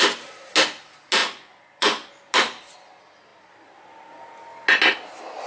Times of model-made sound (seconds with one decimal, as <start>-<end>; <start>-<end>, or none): 1.2-2.1